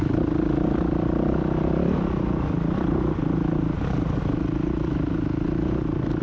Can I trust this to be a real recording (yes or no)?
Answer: yes